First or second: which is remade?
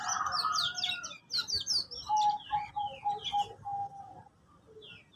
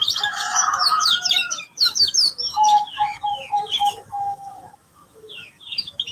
second